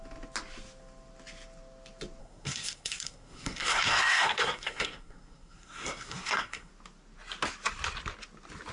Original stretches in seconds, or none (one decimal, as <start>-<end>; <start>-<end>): 0.0-2.2; 6.7-8.7

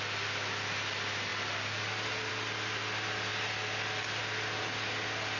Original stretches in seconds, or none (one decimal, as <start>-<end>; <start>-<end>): 0.0-5.4

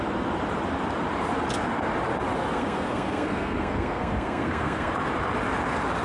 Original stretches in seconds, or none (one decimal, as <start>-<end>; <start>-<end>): 0.0-2.5; 4.9-6.0

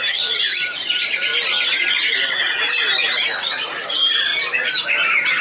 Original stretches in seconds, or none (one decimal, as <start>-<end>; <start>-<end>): 1.3-1.8; 2.9-3.7

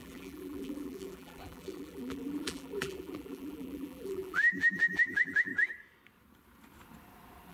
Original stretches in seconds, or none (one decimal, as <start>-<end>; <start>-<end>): 5.5-7.5